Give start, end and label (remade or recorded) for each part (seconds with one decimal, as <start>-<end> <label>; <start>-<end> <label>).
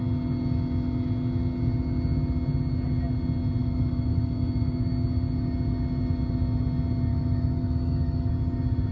0.0-3.6 recorded; 3.6-4.9 remade; 4.9-7.1 recorded; 7.1-8.3 remade; 8.3-8.9 recorded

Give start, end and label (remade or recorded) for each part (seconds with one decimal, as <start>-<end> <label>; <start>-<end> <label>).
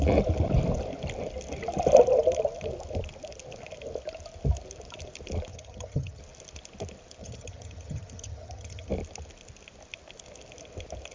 0.0-5.5 recorded; 5.5-6.2 remade; 6.2-7.2 recorded; 7.2-8.9 remade; 8.9-11.1 recorded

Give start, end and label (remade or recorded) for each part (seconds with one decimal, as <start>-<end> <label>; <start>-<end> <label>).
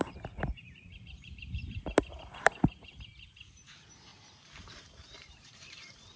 0.0-1.6 remade; 1.6-2.2 recorded; 2.2-4.1 remade; 4.1-4.8 recorded; 4.8-6.2 remade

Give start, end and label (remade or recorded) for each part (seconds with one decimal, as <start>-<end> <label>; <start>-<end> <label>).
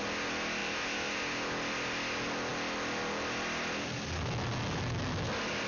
0.0-0.6 recorded; 0.6-1.2 remade; 1.2-5.7 recorded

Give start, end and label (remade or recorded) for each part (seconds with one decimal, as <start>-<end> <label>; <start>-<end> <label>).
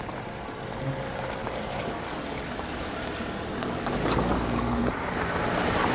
0.0-1.4 recorded; 1.4-2.2 remade; 2.2-3.6 recorded; 3.6-4.8 remade; 4.8-5.9 recorded